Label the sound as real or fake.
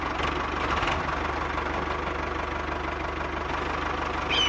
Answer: real